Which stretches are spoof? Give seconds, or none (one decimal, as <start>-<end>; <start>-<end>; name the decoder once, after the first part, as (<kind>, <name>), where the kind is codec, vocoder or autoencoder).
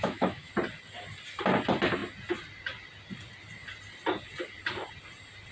0.0-0.5 (autoencoder, DAC-VAE)